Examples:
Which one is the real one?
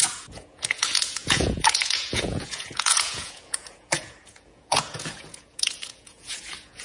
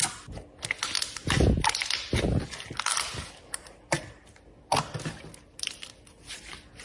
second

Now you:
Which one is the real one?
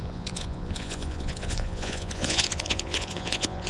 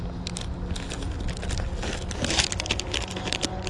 second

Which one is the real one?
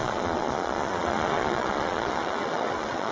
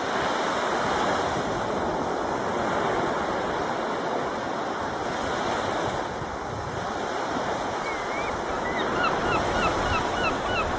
second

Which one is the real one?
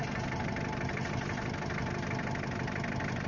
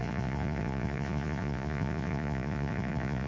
first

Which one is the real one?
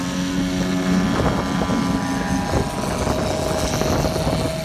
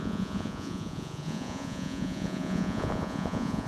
first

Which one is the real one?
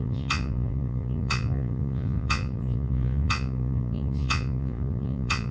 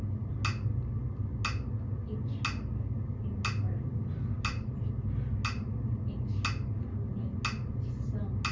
second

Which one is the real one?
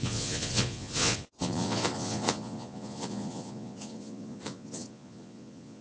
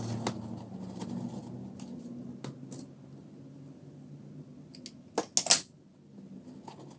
second